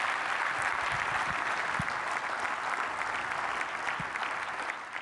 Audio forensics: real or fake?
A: real